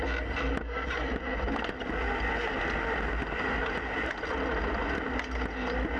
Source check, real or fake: real